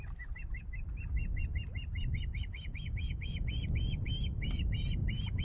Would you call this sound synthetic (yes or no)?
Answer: no